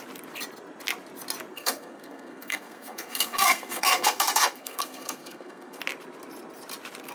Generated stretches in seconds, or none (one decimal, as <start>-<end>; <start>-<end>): 1.5-5.8